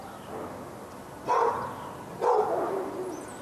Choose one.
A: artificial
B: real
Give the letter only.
B